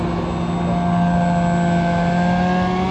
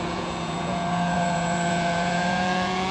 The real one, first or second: first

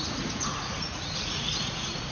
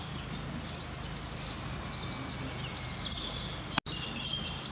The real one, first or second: second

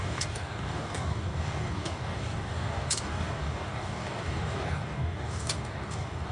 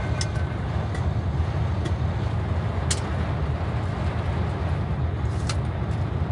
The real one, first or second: second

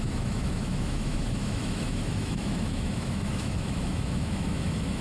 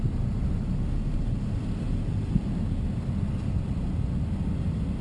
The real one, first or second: second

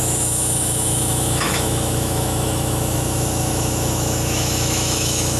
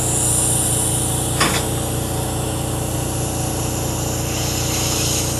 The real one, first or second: second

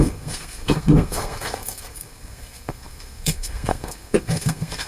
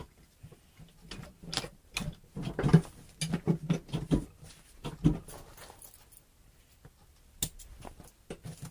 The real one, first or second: second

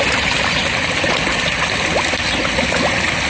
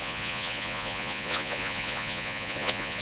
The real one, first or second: first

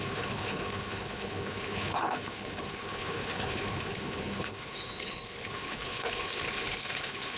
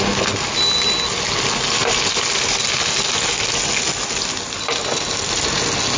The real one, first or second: second